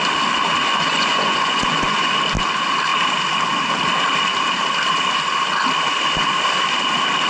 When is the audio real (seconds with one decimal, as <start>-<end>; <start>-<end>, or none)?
0.0-0.7; 2.1-7.3